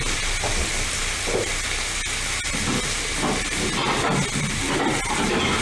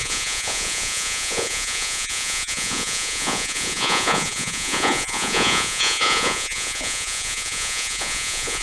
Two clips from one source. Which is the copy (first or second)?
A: second